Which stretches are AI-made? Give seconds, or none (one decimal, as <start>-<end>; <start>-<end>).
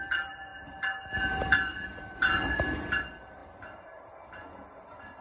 none